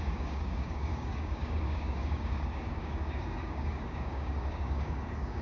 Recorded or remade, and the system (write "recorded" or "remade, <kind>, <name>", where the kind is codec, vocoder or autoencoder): remade, codec, DAC